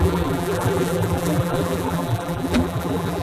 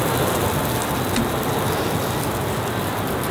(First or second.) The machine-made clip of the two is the first